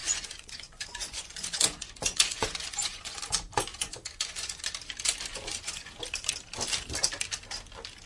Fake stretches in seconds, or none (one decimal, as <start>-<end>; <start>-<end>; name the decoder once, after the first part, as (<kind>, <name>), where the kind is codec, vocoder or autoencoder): 0.0-3.2 (vocoder, Vocos); 3.7-4.6; 5.3-5.9

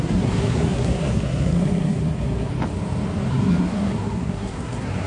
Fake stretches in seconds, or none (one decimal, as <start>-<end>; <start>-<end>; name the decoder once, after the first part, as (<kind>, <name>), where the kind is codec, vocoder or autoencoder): 0.0-2.5 (codec, SNAC); 3.3-5.1

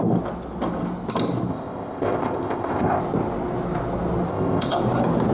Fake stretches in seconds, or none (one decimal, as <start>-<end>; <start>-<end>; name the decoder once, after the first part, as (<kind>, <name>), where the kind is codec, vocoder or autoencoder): 1.5-3.0 (codec, ZipCodec); 4.3-4.8

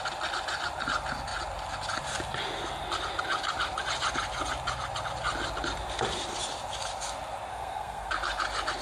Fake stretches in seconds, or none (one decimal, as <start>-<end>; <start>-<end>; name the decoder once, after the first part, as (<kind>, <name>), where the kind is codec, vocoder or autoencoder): 7.5-8.1 (codec, SNAC)

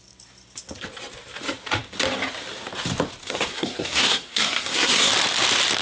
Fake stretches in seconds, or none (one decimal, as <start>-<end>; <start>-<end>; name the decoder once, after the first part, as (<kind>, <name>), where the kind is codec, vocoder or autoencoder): 3.2-5.1 (codec, SNAC)

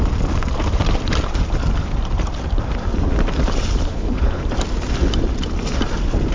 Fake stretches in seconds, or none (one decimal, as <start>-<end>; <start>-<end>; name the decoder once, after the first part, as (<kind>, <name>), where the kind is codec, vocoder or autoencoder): 3.9-4.4 (codec, HILCodec)

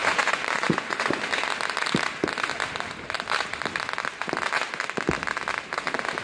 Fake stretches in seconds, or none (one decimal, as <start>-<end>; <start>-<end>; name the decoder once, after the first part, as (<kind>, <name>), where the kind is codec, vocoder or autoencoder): 0.0-1.2 (vocoder, Vocos)

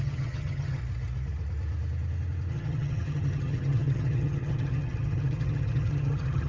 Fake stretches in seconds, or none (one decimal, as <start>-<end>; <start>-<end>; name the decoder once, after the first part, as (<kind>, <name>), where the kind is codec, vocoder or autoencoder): 0.0-0.8 (vocoder, HiFi-GAN); 2.5-6.5